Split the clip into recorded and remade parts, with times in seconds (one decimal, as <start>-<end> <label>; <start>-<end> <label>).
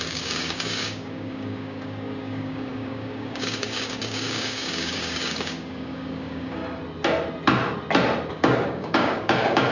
0.0-6.6 remade; 6.6-8.3 recorded; 8.3-9.7 remade